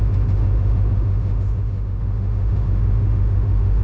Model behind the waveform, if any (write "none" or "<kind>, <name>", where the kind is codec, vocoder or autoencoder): autoencoder, DAC-VAE